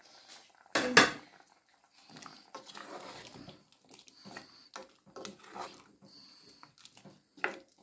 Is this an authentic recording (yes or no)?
yes